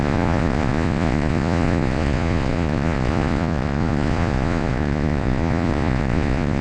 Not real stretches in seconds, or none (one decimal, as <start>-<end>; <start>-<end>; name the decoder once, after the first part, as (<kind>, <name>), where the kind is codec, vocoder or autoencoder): 0.0-6.6 (vocoder, Vocos)